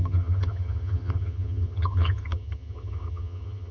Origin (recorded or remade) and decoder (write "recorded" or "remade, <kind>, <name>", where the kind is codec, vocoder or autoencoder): remade, vocoder, HiFi-GAN